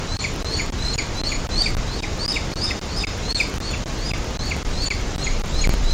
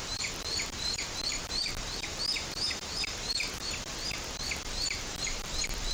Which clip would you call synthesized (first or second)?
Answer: second